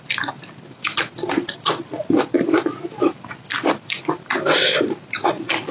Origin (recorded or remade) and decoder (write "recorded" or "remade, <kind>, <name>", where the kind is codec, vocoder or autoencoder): remade, vocoder, BigVGAN v2